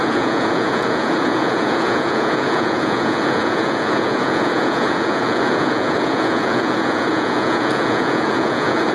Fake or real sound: fake